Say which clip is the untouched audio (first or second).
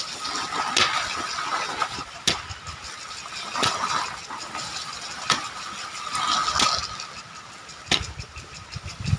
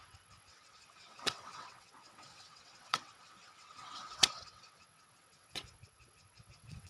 first